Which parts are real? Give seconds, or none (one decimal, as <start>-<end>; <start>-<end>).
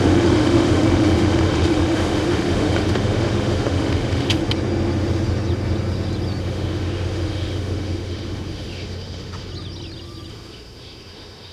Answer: 4.4-6.4; 9.5-10.3